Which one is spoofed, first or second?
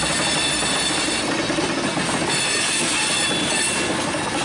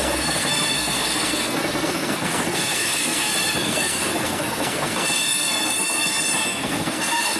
second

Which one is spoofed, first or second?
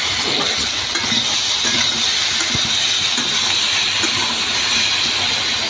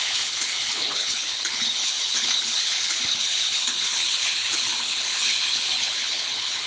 second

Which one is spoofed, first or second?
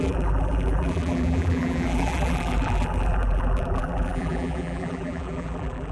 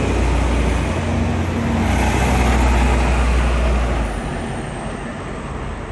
first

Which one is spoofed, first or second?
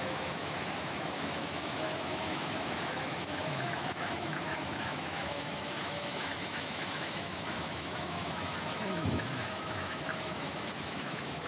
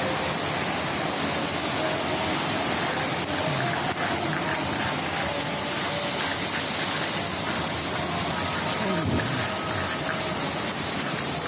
first